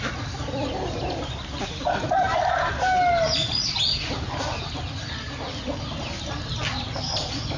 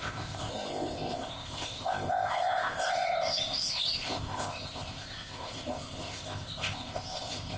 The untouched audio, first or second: first